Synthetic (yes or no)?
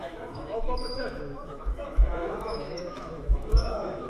yes